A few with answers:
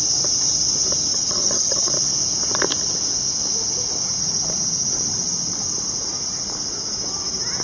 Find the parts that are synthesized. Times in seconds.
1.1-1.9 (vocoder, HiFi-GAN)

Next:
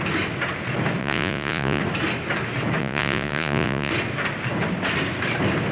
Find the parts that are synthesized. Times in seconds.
1.0-1.8 (vocoder, Vocos); 2.8-3.9

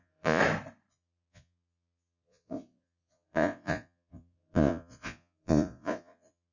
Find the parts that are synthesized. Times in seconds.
0.0-0.4 (vocoder, Vocos); 0.9-6.5

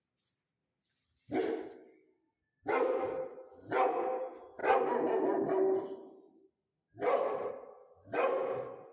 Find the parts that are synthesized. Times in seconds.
none

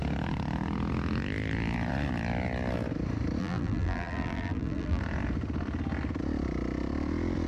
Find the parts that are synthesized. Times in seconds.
3.4-5.0 (vocoder, BigVGAN v2)